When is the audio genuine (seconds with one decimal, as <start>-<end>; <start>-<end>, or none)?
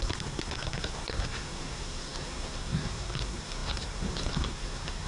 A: none